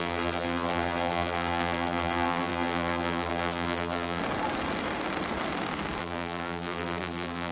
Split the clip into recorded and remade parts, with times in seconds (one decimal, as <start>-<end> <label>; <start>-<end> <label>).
0.0-4.2 remade; 4.2-6.0 recorded; 6.0-7.5 remade